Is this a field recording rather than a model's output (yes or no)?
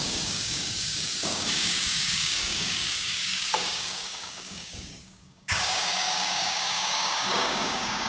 no